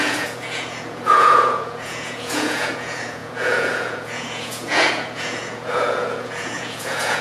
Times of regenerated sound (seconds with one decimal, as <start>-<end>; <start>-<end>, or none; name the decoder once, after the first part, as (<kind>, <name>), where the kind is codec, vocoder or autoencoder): 0.0-7.2 (vocoder, Vocos)